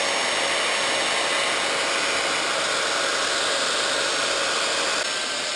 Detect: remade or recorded recorded